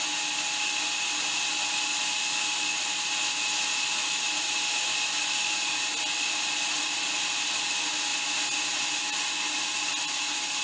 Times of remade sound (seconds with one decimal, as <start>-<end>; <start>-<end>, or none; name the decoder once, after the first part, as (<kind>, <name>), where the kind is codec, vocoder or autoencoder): none